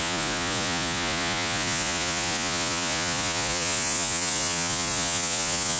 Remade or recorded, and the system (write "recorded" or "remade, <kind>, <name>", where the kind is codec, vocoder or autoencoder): remade, vocoder, Vocos